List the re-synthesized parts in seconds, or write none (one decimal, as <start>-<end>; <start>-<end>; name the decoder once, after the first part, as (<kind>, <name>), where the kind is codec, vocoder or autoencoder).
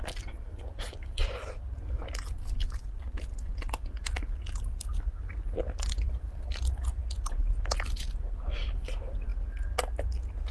none